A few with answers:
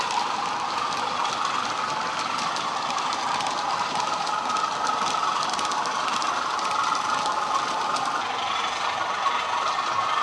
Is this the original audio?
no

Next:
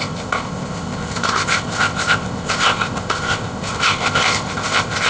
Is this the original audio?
no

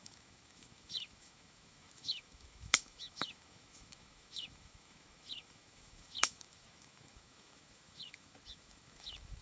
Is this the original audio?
no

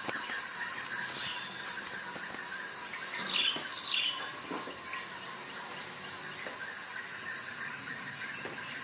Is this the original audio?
yes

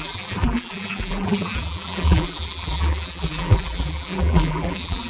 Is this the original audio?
no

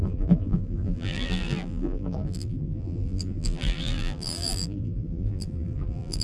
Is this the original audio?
no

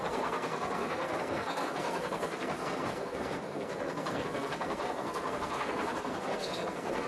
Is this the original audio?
no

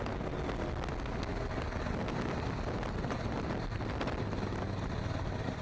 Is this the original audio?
yes